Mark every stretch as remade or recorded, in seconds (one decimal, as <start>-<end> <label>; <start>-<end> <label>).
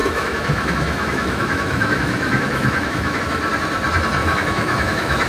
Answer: 0.0-3.2 remade; 3.2-4.2 recorded; 4.2-5.3 remade